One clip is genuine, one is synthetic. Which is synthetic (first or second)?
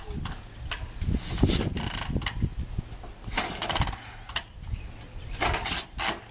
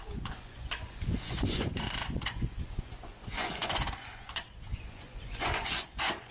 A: second